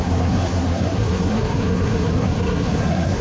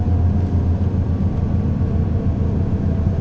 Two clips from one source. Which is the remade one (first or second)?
first